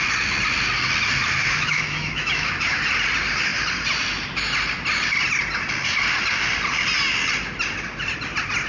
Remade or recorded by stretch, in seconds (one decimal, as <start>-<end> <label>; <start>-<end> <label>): 0.0-1.4 recorded; 1.4-2.8 remade; 2.8-8.7 recorded